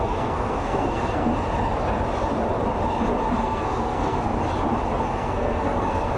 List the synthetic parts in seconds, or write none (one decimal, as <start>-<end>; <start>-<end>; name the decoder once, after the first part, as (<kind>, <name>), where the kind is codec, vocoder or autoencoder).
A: 0.0-1.3 (codec, SNAC); 3.4-4.3; 5.0-6.2